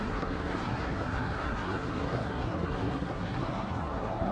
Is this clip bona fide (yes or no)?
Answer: no